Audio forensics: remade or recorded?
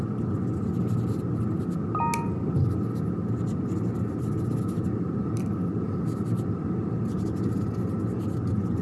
recorded